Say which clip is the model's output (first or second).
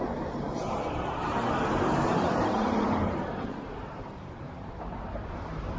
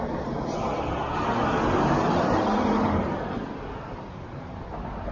first